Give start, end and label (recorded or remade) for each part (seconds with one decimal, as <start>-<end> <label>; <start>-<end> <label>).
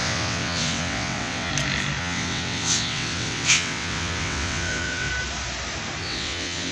0.0-1.5 remade; 1.5-2.0 recorded; 2.0-5.1 remade; 5.1-6.0 recorded; 6.0-6.7 remade